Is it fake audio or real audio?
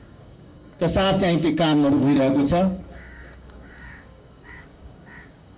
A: fake